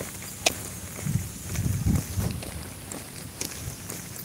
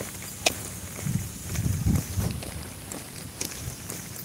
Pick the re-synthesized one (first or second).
second